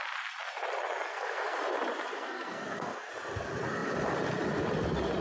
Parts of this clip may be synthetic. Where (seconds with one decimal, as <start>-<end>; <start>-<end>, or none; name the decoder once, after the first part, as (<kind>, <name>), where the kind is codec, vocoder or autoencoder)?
1.1-1.6 (codec, SNAC); 2.1-3.1